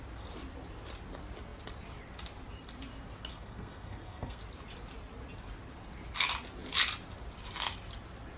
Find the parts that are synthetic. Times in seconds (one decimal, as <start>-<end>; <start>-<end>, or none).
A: 3.3-4.4